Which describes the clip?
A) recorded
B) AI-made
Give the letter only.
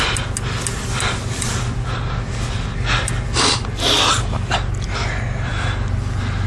A